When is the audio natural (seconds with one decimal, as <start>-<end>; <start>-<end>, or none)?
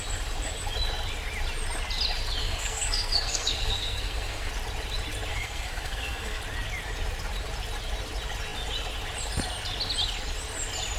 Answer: 0.0-2.4; 4.5-5.3; 6.4-11.0